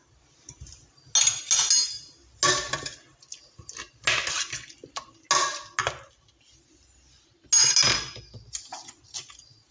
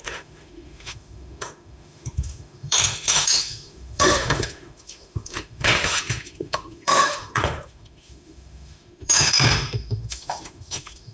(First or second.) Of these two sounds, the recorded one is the first